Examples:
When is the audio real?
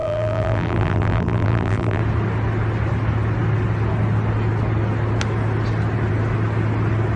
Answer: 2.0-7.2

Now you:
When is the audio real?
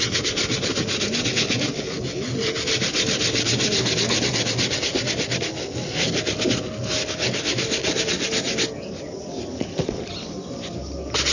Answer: 0.0-7.8; 10.0-11.3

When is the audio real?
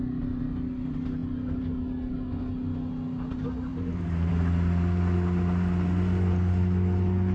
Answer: 0.0-3.7; 4.3-7.3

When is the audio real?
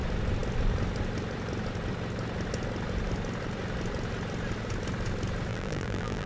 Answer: 0.0-5.5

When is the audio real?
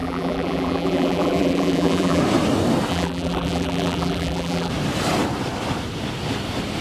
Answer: 2.2-2.9; 4.7-6.8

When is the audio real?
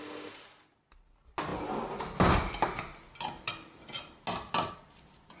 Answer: 0.0-5.4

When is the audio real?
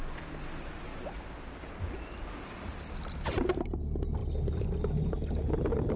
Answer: 0.0-6.0